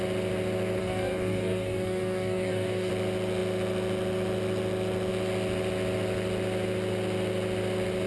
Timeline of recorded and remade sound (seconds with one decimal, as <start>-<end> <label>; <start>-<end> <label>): 0.0-0.8 recorded; 0.8-2.9 remade; 2.9-8.1 recorded